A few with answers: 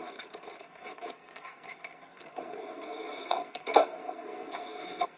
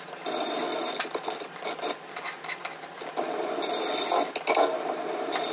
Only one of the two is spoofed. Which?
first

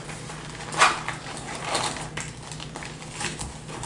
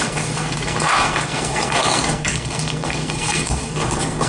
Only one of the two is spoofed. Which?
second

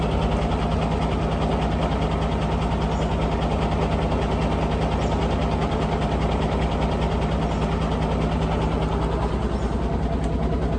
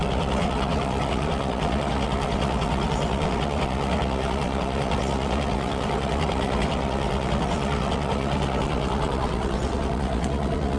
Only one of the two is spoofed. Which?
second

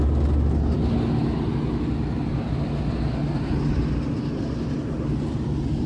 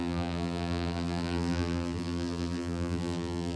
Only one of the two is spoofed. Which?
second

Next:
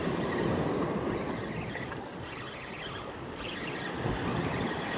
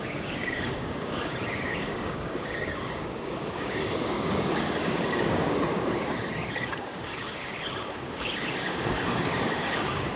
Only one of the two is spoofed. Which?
second